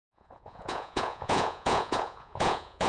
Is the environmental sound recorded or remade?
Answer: remade